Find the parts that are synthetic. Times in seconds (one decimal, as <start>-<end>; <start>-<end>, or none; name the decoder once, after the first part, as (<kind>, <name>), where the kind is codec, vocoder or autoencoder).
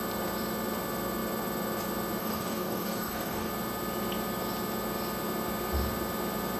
2.2-3.5 (codec, DAC)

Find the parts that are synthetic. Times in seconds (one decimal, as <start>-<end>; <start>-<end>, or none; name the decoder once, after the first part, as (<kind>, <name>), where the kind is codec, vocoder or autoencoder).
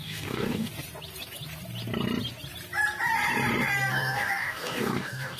0.0-0.7 (codec, DAC); 3.9-5.4